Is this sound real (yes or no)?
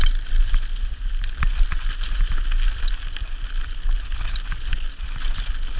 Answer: yes